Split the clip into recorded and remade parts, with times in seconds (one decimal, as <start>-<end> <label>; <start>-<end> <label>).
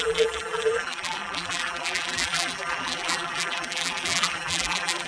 0.0-5.1 remade